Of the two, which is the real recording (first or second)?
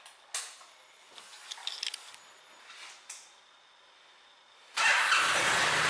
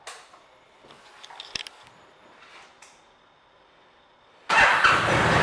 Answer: first